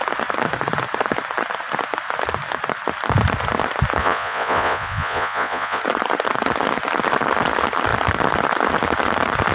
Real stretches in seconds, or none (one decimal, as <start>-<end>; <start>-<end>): 0.0-4.0; 5.8-9.5